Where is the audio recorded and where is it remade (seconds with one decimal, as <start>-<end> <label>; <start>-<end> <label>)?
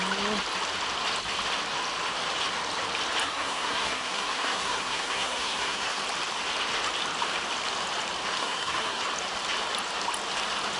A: 0.0-3.2 recorded; 3.2-6.0 remade; 6.0-8.4 recorded; 8.4-9.0 remade; 9.0-10.8 recorded